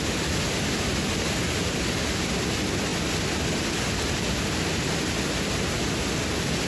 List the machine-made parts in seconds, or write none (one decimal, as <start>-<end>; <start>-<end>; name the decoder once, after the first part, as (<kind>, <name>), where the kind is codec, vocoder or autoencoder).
none